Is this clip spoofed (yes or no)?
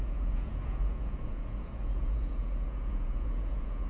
yes